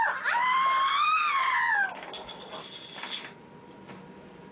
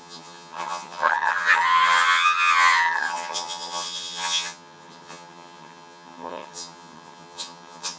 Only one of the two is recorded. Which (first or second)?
first